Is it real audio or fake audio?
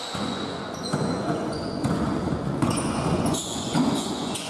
fake